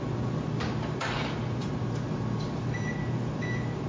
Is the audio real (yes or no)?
no